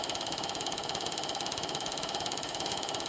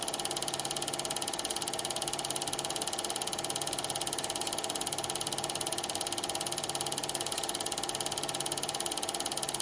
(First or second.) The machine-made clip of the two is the first